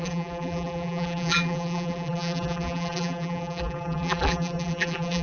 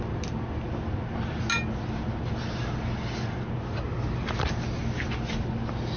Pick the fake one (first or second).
first